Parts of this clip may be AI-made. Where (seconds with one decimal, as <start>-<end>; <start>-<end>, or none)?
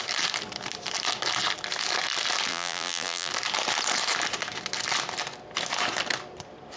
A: 2.5-3.3